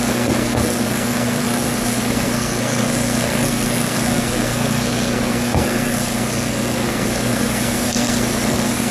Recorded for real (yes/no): no